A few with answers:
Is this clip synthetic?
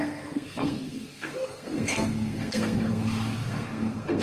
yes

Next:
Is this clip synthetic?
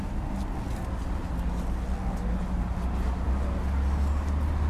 no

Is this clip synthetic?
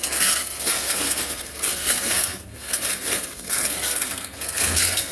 yes